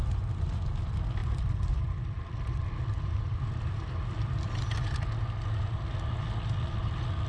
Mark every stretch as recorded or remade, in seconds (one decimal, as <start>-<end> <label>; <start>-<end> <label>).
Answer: 0.0-1.2 recorded; 1.2-5.2 remade; 5.2-7.3 recorded